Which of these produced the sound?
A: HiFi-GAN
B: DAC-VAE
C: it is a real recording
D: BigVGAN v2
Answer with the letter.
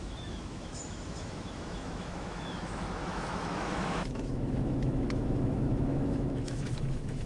B